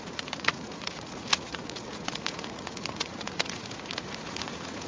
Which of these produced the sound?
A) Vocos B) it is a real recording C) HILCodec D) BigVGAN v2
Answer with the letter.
A